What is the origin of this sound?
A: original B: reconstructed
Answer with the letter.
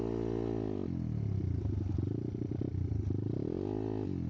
A